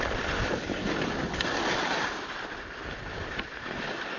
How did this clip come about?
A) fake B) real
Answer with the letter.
B